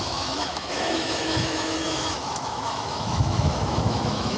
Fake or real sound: fake